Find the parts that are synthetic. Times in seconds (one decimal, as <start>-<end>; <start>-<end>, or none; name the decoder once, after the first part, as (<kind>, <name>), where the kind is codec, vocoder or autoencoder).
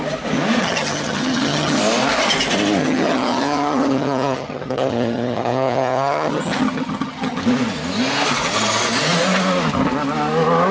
0.6-1.8 (vocoder, HiFi-GAN); 2.8-7.4